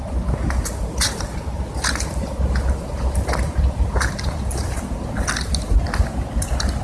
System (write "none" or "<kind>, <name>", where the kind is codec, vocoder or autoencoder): none